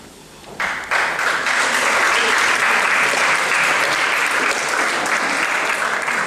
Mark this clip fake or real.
real